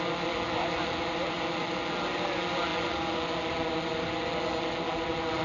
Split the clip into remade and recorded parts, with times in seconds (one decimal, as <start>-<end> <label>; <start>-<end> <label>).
0.0-5.4 recorded